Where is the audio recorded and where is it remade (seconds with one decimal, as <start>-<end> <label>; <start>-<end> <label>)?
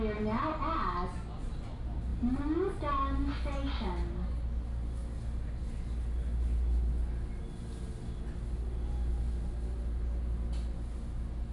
0.0-11.5 recorded